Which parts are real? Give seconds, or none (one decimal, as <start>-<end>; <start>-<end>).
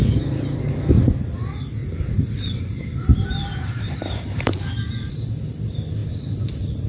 0.0-1.8; 5.1-6.9